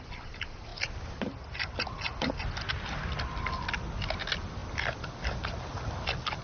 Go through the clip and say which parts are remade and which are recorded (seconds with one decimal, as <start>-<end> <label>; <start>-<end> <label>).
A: 0.0-6.4 recorded